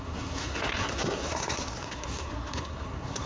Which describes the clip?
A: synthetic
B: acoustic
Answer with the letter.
A